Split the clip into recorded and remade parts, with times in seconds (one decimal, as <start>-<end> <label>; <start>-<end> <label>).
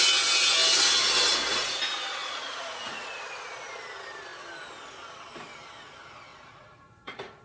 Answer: 0.0-1.3 recorded; 1.3-1.8 remade; 1.8-2.2 recorded; 2.2-3.1 remade; 3.1-6.3 recorded; 6.3-7.4 remade